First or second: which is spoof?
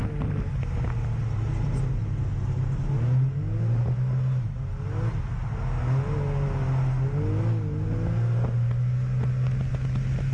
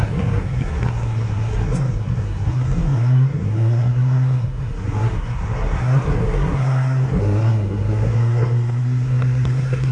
second